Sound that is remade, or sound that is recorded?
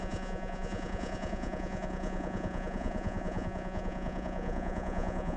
remade